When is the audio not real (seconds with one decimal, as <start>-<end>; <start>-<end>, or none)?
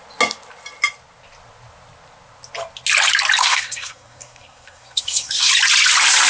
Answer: 3.4-5.5